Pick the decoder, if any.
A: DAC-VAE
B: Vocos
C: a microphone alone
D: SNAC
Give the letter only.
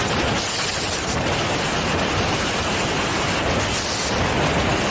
C